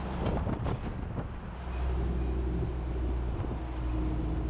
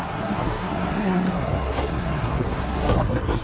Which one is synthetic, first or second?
second